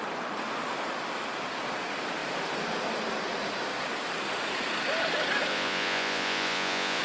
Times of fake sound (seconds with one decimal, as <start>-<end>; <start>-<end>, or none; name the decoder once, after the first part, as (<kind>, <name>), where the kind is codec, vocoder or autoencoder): 5.5-7.0 (vocoder, Vocos)